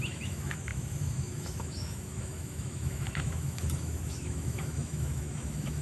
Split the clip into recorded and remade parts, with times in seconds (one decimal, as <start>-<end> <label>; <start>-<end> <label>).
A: 0.0-5.8 remade